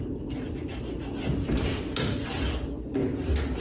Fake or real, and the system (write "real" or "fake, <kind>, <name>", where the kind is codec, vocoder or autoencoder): real